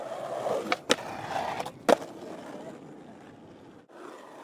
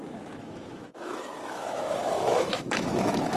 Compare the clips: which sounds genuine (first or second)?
first